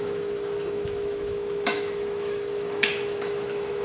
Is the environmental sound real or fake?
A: fake